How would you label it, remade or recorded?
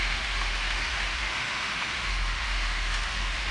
remade